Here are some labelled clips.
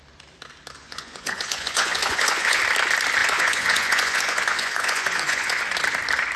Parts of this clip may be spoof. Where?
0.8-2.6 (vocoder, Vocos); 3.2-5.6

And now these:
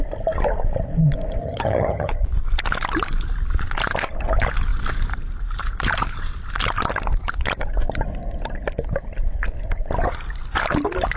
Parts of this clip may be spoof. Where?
1.4-2.1 (vocoder, HiFi-GAN)

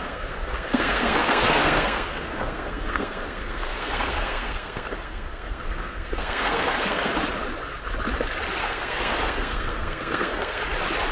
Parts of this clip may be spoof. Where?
0.0-7.1 (codec, SNAC); 8.6-10.6

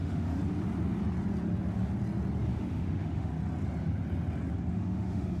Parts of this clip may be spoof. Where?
0.0-0.4 (autoencoder, DAC-VAE); 2.5-3.3; 4.7-5.4

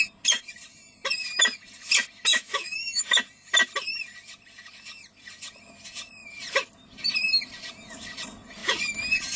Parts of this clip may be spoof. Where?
2.3-3.0 (autoencoder, DAC-VAE)

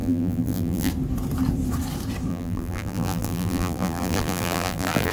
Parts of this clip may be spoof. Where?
0.0-0.9 (vocoder, BigVGAN v2); 2.3-5.1

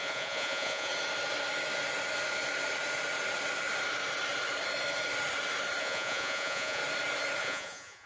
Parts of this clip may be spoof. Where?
0.0-0.9 (vocoder, Vocos); 5.8-6.8; 7.4-8.1

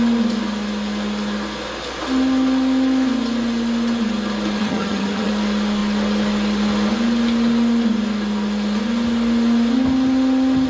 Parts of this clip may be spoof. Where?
4.6-5.3 (vocoder, HiFi-GAN)